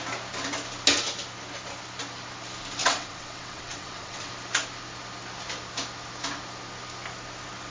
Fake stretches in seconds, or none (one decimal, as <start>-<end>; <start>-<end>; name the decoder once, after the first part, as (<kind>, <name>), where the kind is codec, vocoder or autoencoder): 2.8-4.3 (vocoder, WaveNeXt)

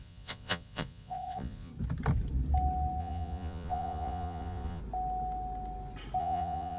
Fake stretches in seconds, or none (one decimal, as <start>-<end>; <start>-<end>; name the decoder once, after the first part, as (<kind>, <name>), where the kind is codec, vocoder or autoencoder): 0.0-1.7 (vocoder, Vocos); 3.0-4.8; 6.2-6.8